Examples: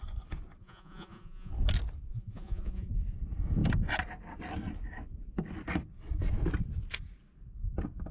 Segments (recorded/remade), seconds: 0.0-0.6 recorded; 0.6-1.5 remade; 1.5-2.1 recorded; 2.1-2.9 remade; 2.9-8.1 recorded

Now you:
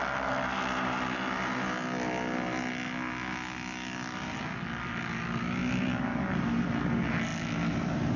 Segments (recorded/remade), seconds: 0.0-8.2 recorded

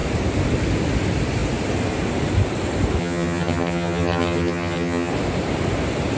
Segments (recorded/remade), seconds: 0.0-3.0 recorded; 3.0-5.1 remade; 5.1-6.2 recorded

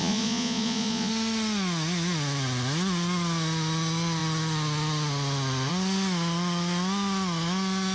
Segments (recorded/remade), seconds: 0.0-1.1 remade; 1.1-7.9 recorded

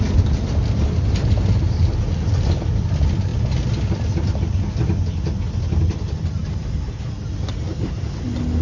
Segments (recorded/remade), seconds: 0.0-8.6 recorded

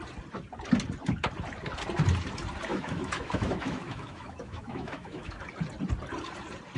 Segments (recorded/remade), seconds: 0.0-2.7 recorded; 2.7-5.4 remade; 5.4-6.8 recorded

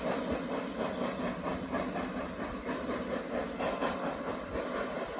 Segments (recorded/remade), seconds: 0.0-5.2 recorded

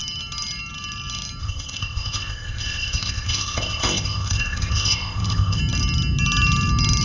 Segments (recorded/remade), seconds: 0.0-1.4 recorded; 1.4-5.6 remade; 5.6-7.0 recorded